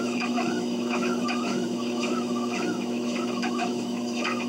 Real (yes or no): no